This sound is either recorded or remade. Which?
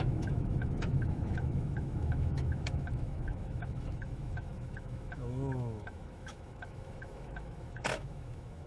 remade